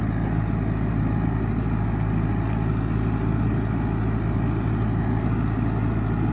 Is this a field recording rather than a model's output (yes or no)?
yes